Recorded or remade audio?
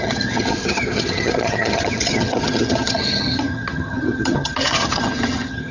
remade